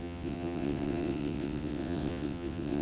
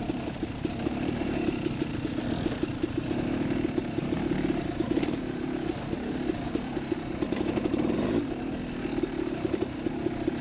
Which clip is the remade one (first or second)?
first